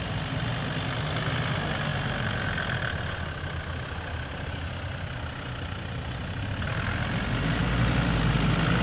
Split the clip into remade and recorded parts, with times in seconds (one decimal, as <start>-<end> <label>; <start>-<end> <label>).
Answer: 0.0-8.8 recorded